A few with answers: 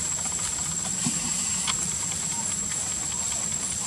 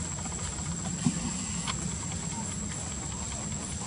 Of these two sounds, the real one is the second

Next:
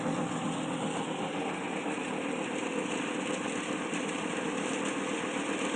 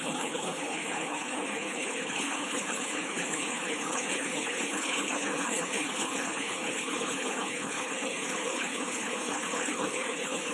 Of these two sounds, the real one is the first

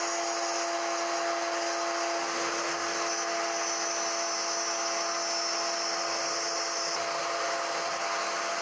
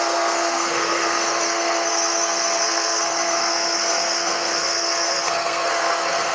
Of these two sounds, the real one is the first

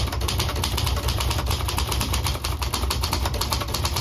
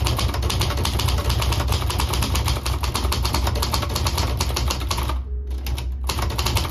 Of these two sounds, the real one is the second